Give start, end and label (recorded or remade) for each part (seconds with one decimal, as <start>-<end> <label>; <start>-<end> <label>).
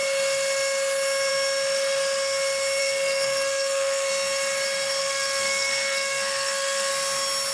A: 0.0-2.8 recorded; 2.8-4.1 remade; 4.1-5.0 recorded; 5.0-6.9 remade; 6.9-7.5 recorded